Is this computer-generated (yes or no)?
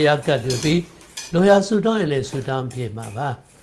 yes